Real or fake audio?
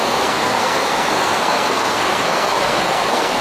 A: fake